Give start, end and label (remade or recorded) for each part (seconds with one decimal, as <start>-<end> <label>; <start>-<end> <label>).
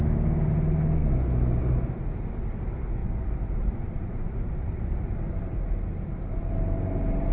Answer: 0.0-3.0 recorded; 3.0-5.2 remade; 5.2-7.3 recorded